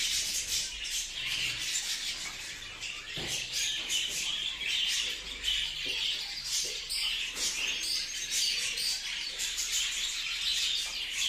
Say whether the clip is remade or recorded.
remade